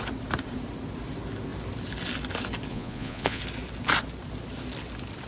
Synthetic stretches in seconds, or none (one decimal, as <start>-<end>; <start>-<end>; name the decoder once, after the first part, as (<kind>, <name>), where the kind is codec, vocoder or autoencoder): 2.7-3.4 (vocoder, Vocos)